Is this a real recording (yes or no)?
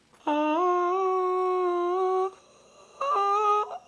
yes